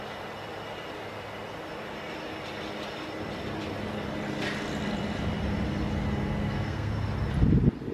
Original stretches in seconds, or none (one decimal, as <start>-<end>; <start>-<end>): 0.0-6.4; 6.9-7.9